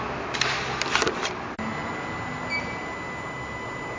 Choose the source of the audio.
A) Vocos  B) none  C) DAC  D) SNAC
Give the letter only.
B